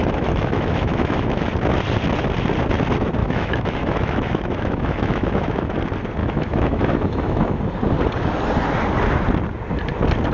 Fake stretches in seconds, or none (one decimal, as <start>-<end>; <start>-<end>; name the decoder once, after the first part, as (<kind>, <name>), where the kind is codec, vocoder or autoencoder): 0.0-1.5 (autoencoder, DAC-VAE); 3.2-5.8; 6.2-7.6